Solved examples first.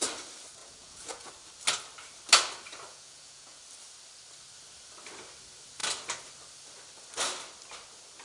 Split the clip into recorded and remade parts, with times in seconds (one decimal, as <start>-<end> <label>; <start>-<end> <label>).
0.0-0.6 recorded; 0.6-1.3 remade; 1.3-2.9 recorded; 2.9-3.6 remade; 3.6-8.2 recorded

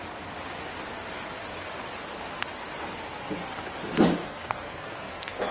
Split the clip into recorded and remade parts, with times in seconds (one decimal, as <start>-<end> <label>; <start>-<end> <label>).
0.0-4.2 recorded; 4.2-5.5 remade

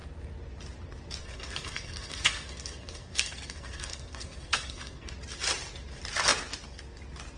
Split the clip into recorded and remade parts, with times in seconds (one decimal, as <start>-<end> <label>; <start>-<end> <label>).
0.0-1.2 recorded; 1.2-5.1 remade; 5.1-7.4 recorded

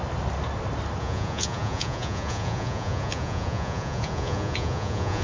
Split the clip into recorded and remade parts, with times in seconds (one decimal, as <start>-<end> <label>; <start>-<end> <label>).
0.0-1.0 recorded; 1.0-5.2 remade